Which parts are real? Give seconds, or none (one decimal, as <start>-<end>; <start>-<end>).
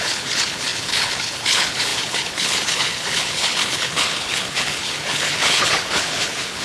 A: none